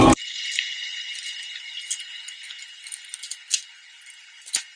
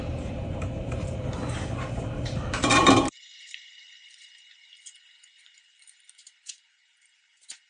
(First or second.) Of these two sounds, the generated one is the second